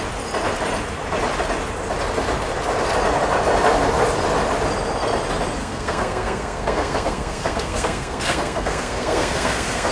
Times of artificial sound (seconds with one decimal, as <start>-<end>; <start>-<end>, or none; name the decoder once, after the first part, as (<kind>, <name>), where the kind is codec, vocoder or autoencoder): 5.6-9.9 (codec, SNAC)